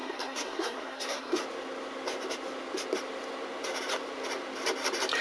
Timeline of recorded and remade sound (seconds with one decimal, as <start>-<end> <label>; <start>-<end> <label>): 0.0-1.4 remade; 1.4-5.2 recorded